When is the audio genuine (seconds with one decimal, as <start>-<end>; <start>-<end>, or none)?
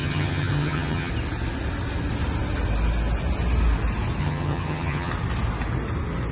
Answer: 1.1-4.2; 5.1-6.3